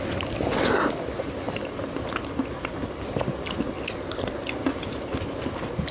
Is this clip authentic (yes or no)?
yes